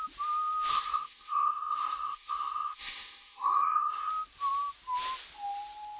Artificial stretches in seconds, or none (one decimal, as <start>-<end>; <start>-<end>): 0.7-4.1